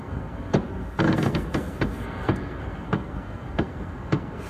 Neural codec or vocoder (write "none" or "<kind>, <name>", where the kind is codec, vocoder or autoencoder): codec, SNAC